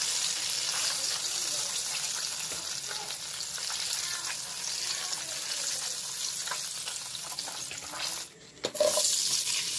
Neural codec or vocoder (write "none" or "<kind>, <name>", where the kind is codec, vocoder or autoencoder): none